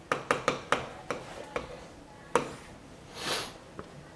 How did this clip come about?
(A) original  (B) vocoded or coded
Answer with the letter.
A